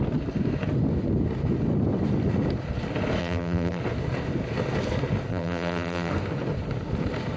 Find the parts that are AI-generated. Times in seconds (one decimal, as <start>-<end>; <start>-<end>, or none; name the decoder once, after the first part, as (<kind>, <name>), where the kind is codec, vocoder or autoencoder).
3.2-3.8 (vocoder, BigVGAN v2); 5.3-6.1